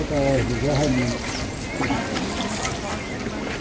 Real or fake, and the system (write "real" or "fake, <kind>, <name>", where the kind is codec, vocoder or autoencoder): real